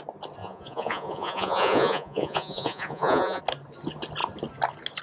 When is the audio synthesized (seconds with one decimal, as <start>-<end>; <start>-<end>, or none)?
0.4-3.4